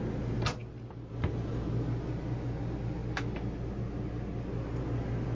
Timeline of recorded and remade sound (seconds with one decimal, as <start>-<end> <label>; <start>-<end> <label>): 0.0-5.3 recorded